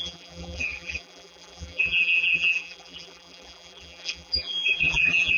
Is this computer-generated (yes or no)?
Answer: yes